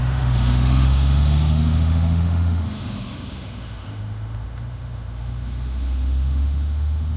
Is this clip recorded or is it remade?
remade